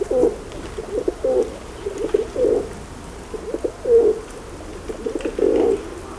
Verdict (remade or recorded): recorded